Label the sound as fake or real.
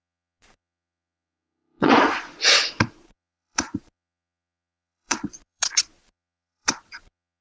fake